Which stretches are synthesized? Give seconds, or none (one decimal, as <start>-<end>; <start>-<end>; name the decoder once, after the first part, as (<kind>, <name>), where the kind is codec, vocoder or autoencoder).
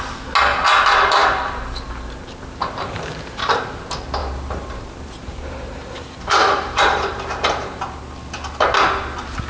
1.2-3.6 (vocoder, BigVGAN v2); 4.2-8.0